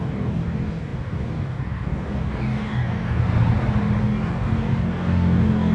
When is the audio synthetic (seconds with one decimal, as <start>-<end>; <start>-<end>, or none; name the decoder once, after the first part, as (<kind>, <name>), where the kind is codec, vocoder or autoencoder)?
0.0-3.3 (codec, DAC); 4.0-5.7